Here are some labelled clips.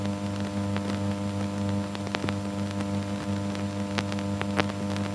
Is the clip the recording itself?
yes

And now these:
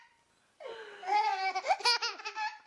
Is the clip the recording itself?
yes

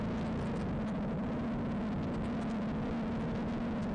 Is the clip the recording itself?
yes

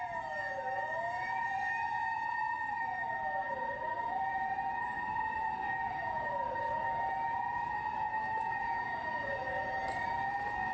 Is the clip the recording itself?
no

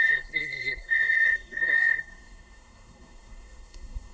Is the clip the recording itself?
no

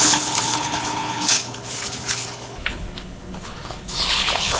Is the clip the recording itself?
no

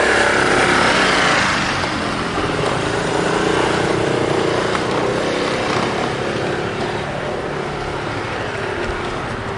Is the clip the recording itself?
yes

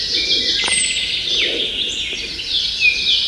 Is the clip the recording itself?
yes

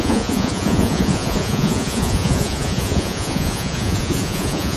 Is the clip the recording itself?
no